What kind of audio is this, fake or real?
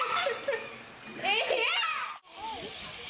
real